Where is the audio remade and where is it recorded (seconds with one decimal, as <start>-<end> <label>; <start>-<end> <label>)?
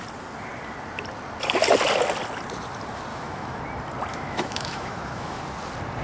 0.0-3.1 recorded; 3.1-3.6 remade; 3.6-4.1 recorded; 4.1-5.4 remade; 5.4-6.0 recorded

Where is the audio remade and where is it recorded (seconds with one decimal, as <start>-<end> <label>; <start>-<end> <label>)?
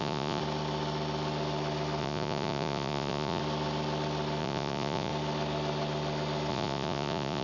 0.0-0.4 remade; 0.4-2.0 recorded; 2.0-3.4 remade; 3.4-4.4 recorded; 4.4-5.1 remade; 5.1-6.5 recorded; 6.5-7.4 remade